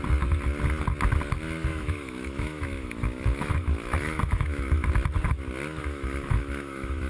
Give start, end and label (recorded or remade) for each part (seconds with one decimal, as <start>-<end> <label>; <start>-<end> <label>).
0.0-1.7 recorded; 1.7-4.9 remade; 4.9-5.8 recorded; 5.8-7.1 remade